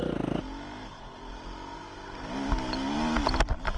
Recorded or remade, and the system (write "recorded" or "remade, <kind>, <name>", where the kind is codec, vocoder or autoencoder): recorded